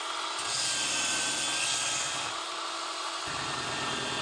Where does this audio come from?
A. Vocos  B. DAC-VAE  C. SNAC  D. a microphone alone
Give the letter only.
D